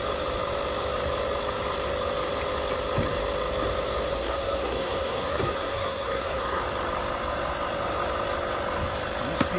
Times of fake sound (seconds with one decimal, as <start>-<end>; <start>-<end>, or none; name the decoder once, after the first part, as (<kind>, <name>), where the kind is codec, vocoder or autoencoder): 4.1-6.6 (codec, SNAC)